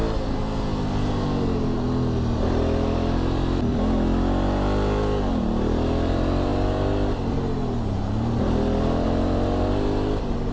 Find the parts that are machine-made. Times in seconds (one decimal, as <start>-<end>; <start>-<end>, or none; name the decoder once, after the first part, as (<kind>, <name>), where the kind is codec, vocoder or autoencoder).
none